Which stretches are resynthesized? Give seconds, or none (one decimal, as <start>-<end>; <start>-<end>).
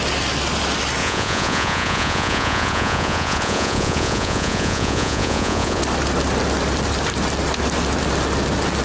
1.0-5.8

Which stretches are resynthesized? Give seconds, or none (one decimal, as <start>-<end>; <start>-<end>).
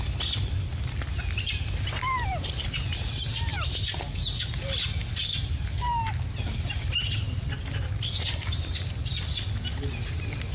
none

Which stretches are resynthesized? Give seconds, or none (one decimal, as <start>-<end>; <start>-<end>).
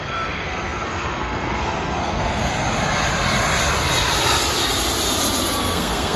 0.0-2.5; 5.6-6.2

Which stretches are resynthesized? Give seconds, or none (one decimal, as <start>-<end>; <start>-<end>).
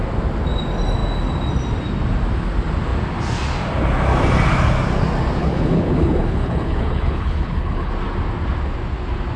5.4-7.9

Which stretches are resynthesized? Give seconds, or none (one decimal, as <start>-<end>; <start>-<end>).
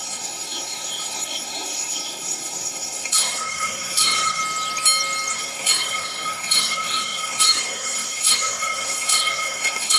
0.0-4.4; 5.3-10.0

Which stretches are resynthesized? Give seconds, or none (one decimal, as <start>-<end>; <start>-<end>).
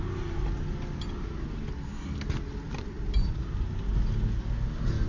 none